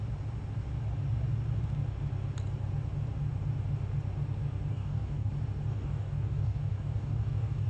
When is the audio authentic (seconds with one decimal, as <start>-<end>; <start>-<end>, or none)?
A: 0.0-4.7; 5.3-5.7